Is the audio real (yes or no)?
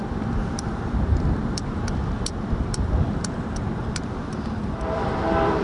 no